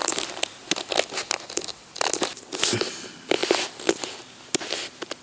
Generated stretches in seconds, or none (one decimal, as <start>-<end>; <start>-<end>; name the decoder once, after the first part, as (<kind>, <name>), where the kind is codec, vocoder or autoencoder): 3.4-3.9 (vocoder, BigVGAN v2)